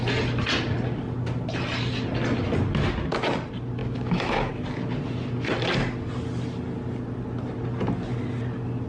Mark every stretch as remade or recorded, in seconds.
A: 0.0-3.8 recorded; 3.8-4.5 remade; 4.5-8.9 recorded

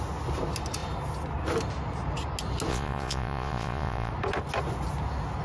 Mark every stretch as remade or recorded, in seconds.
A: 0.0-2.7 recorded; 2.7-4.1 remade; 4.1-5.4 recorded

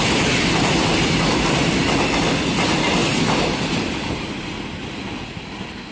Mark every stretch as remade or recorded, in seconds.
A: 0.0-5.9 recorded

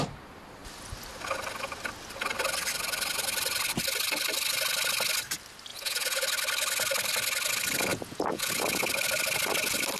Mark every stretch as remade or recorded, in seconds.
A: 0.0-5.7 recorded; 5.7-6.2 remade; 6.2-7.9 recorded; 7.9-8.5 remade; 8.5-10.0 recorded